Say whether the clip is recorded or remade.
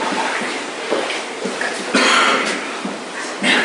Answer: recorded